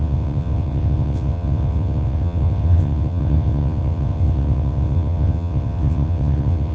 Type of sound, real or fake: fake